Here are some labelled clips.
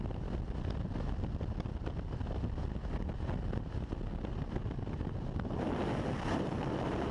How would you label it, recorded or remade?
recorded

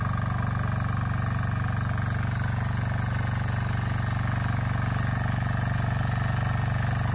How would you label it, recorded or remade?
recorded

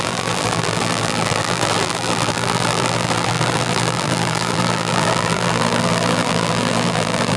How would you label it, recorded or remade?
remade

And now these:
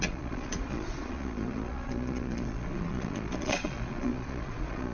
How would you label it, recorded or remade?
remade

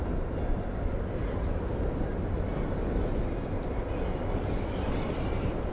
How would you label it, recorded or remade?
recorded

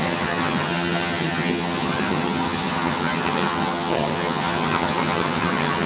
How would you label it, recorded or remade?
remade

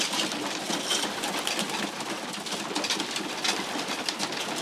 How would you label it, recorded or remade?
recorded